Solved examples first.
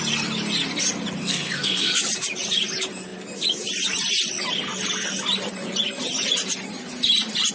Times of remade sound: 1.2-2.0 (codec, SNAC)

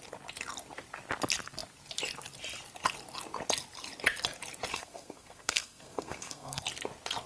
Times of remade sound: 4.7-6.6 (codec, SNAC)

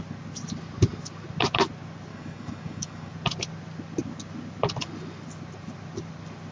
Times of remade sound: 2.1-3.1 (codec, DAC)

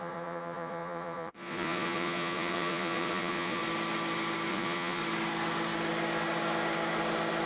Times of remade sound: 0.0-3.6 (vocoder, Vocos); 4.5-5.0

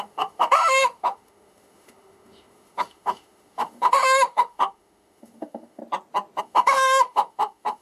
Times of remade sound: 0.0-5.8 (autoencoder, DAC-VAE); 6.4-7.8

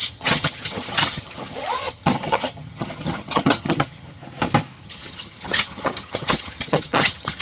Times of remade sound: 0.0-4.2 (vocoder, HiFi-GAN); 4.8-7.4

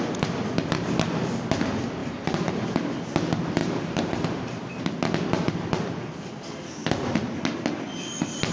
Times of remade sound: 2.0-2.5 (vocoder, BigVGAN v2); 3.6-4.8

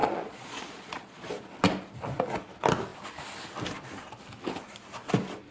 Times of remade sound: 0.0-1.3 (vocoder, Vocos)